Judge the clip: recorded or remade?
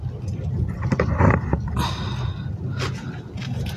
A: recorded